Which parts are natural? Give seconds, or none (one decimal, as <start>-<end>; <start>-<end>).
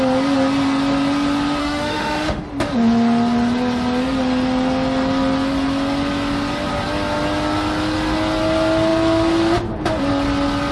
0.0-1.6; 2.4-10.7